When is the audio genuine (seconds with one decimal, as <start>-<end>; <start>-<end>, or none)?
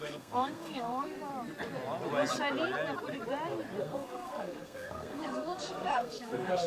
1.3-3.8